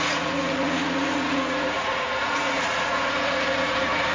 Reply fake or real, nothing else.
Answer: fake